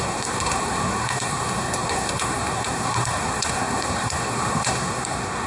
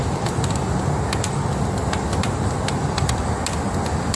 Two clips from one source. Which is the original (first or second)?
second